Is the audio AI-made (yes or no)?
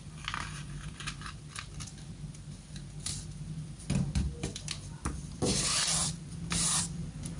no